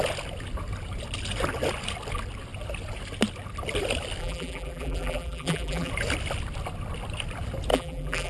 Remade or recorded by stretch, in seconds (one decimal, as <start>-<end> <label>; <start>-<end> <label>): 0.0-4.2 recorded; 4.2-5.9 remade; 5.9-7.7 recorded; 7.7-8.3 remade